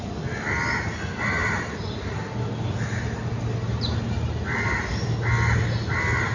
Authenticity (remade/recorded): recorded